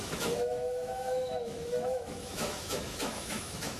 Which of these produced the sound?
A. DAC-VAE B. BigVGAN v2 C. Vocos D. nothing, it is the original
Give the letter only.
A